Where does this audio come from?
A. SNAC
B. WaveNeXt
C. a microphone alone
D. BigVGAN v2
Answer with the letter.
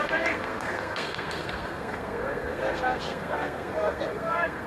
A